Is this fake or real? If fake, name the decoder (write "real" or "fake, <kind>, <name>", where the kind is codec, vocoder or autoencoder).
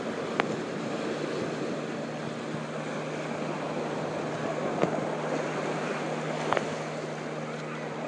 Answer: real